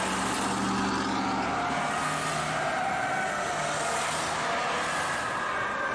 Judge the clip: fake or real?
real